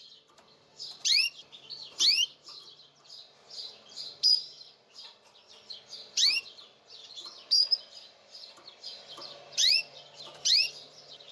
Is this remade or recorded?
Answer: remade